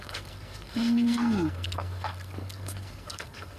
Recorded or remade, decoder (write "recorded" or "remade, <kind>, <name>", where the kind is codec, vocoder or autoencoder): remade, codec, SNAC